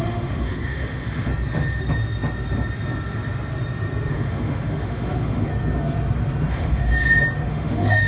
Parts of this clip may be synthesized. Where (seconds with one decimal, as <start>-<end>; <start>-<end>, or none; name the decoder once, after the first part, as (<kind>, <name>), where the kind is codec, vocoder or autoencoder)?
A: 0.0-1.3 (autoencoder, DAC-VAE); 4.1-5.5; 6.5-6.9; 7.5-8.1

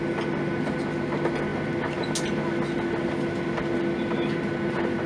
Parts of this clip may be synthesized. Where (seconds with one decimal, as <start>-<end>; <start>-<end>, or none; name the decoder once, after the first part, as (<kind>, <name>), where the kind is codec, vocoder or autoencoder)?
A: none

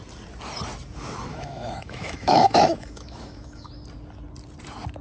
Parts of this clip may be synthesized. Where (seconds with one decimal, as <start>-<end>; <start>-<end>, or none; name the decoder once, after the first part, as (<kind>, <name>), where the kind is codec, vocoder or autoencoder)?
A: 1.3-3.7 (autoencoder, DAC-VAE)

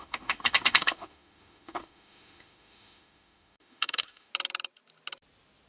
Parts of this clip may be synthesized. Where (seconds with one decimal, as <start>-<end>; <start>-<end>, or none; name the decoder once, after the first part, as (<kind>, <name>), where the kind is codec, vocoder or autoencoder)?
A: 0.0-4.3 (autoencoder, DAC-VAE)

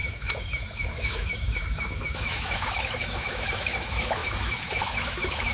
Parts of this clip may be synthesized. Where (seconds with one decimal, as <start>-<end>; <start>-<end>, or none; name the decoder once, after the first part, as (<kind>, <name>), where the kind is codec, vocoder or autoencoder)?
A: 0.0-5.5 (autoencoder, DAC-VAE)

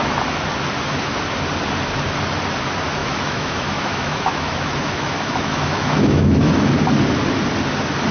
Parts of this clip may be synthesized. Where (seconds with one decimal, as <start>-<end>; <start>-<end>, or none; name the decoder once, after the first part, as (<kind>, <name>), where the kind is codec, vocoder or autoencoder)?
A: 3.0-6.5 (autoencoder, DAC-VAE)